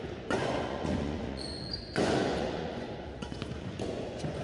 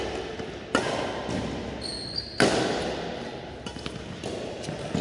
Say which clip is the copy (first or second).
first